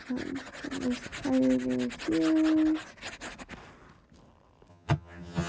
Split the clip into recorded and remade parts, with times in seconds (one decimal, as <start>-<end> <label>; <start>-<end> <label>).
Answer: 0.0-4.7 recorded; 4.7-5.5 remade